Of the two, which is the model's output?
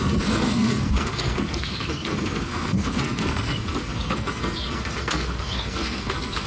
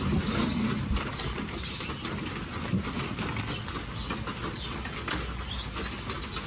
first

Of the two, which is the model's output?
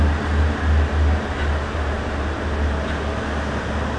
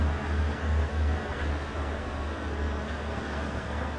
second